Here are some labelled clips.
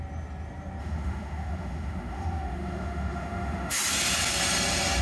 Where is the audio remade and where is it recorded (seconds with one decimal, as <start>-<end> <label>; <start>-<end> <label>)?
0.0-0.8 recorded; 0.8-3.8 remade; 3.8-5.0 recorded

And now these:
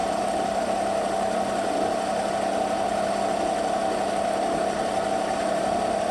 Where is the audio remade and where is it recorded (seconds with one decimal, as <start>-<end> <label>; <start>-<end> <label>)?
0.0-6.1 recorded

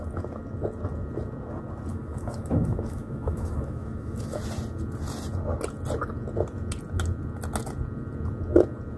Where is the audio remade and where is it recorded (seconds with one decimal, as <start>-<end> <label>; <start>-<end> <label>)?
0.0-1.9 recorded; 1.9-4.4 remade; 4.4-9.0 recorded